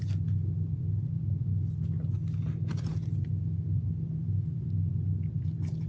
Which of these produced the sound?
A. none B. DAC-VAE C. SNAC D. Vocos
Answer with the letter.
A